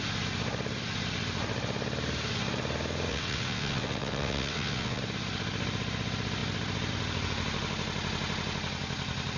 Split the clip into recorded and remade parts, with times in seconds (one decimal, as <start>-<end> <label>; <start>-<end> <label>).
0.0-3.1 recorded; 3.1-5.0 remade; 5.0-9.4 recorded